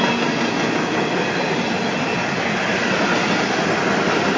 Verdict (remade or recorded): recorded